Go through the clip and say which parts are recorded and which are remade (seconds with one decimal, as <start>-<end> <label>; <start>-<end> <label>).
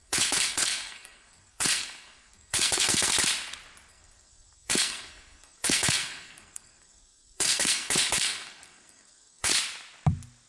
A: 0.0-3.1 remade; 3.1-3.9 recorded; 3.9-9.5 remade; 9.5-10.5 recorded